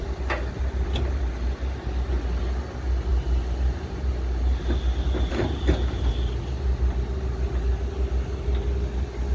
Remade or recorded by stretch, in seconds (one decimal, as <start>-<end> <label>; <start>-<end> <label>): 0.0-3.1 recorded; 3.1-6.1 remade; 6.1-9.3 recorded